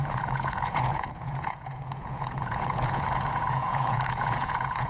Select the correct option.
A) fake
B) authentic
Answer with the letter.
A